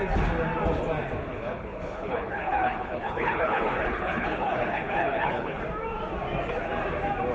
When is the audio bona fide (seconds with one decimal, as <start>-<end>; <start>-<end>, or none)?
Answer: 0.0-1.2; 5.6-7.3